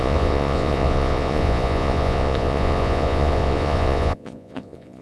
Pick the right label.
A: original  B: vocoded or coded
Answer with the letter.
B